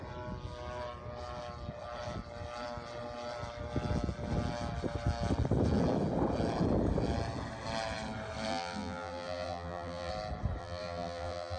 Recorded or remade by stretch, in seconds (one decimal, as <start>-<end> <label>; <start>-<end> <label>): 0.0-8.5 recorded; 8.5-10.1 remade; 10.1-10.6 recorded; 10.6-11.6 remade